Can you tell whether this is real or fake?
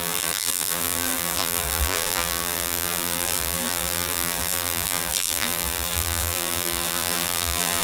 fake